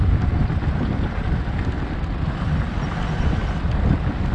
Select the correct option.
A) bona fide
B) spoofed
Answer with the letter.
A